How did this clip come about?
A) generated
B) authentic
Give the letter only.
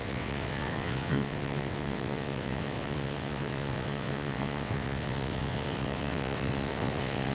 A